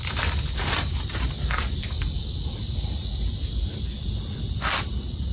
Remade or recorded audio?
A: recorded